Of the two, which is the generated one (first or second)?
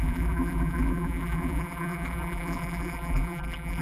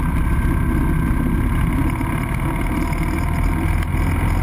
first